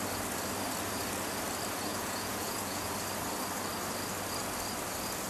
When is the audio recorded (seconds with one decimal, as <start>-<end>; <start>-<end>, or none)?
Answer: 0.0-1.9; 2.9-5.3

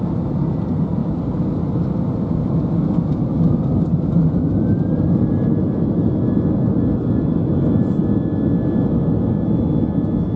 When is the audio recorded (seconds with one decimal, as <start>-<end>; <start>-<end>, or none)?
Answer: 0.0-3.3; 4.4-10.4

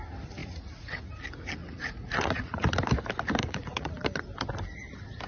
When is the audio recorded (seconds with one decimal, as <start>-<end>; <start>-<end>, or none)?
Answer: 0.0-0.4; 1.1-1.6; 2.7-3.4; 4.2-5.3

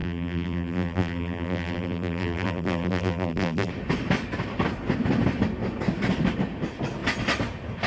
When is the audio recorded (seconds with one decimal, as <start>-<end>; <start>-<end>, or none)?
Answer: 3.7-7.9

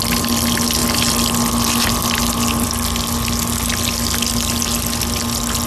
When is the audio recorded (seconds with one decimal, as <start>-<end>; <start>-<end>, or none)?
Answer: 0.0-5.7